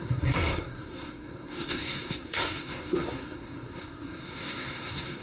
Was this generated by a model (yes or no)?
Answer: yes